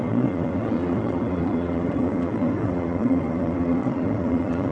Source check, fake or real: fake